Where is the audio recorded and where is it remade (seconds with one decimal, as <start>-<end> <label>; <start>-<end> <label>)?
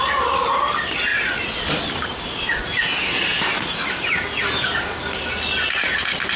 0.0-6.4 recorded